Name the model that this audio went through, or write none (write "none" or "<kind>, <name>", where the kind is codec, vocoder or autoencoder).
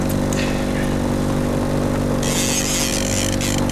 none